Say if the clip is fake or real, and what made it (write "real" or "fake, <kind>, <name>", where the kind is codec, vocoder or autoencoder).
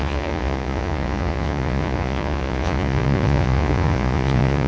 fake, vocoder, Vocos